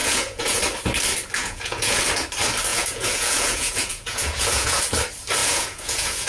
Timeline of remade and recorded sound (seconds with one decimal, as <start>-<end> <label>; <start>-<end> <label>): 0.0-0.6 remade; 0.6-1.4 recorded; 1.4-2.0 remade; 2.0-2.7 recorded; 2.7-4.8 remade; 4.8-5.4 recorded; 5.4-6.3 remade